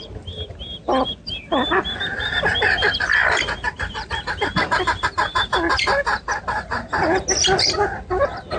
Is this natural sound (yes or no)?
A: yes